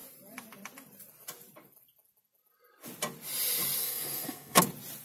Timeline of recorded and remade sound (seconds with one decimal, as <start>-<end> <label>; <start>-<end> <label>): 0.0-3.8 recorded; 3.8-4.6 remade; 4.6-5.0 recorded